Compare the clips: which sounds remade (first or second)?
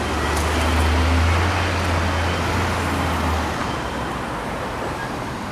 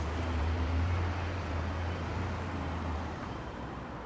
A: second